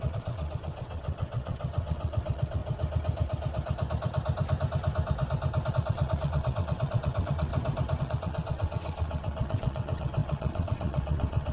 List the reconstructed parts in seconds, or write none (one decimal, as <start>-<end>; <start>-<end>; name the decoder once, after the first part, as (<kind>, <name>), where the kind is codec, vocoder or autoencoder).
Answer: 0.0-2.6 (vocoder, WaveNeXt); 5.7-7.5; 8.0-11.5